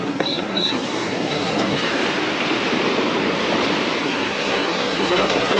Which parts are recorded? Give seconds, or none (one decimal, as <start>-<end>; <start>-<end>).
1.9-4.0